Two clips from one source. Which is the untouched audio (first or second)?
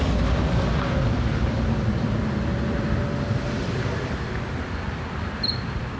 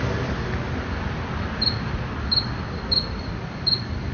second